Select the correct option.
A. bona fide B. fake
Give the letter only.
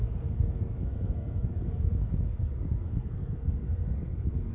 B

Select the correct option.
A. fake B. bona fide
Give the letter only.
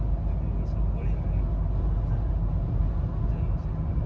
B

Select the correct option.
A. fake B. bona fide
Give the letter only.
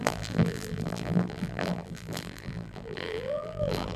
A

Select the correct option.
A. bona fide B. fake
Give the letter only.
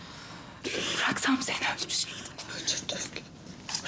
A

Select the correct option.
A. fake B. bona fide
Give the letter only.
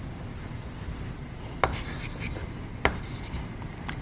B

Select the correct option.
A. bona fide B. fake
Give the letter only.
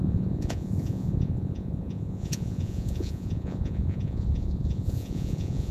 B